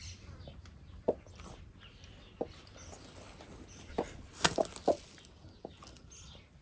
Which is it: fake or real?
real